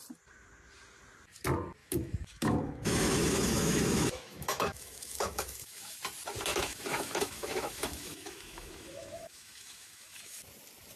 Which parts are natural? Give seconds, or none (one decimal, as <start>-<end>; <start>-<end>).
0.0-1.8; 6.0-6.5; 10.4-11.0